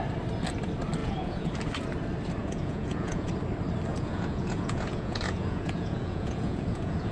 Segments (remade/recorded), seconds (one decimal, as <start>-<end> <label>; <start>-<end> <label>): 0.0-1.0 recorded; 1.0-1.5 remade; 1.5-2.4 recorded; 2.4-3.3 remade; 3.3-3.9 recorded; 3.9-7.1 remade